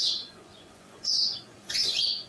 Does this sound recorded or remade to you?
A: remade